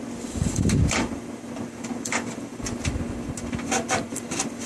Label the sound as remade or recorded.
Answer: remade